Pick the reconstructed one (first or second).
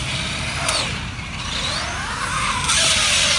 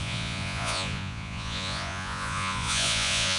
second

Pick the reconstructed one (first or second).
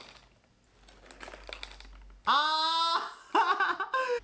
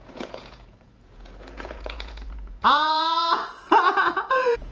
second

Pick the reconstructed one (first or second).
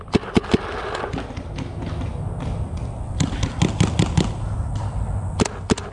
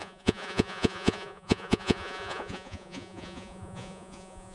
second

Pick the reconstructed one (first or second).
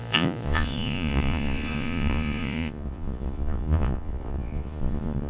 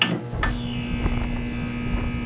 first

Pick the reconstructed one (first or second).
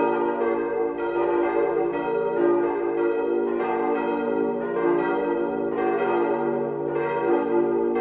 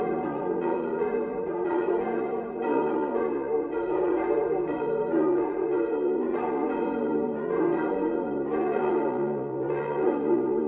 second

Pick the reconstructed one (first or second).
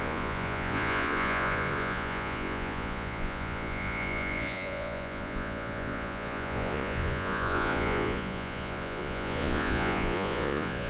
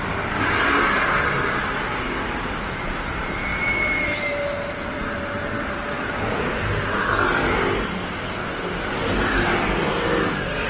first